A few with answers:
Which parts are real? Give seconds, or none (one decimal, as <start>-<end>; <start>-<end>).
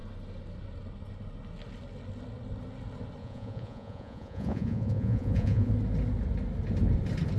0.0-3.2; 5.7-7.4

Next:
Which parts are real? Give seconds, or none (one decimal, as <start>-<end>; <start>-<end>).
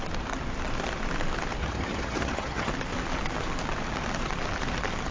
0.0-1.6; 2.7-5.1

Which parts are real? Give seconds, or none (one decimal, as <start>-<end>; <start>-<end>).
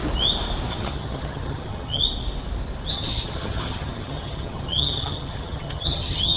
0.0-0.7; 2.0-2.9